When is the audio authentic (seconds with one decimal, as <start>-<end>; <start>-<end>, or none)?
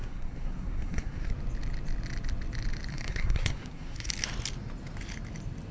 1.3-2.9; 4.1-5.7